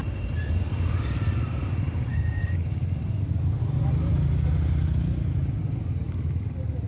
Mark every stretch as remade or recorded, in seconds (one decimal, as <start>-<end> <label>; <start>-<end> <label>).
0.0-2.1 recorded; 2.1-2.8 remade; 2.8-6.9 recorded